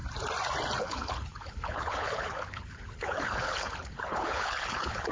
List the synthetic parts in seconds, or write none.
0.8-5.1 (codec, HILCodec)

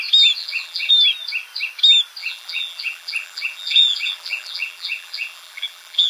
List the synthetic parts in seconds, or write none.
0.4-0.9 (vocoder, BigVGAN v2); 2.2-6.1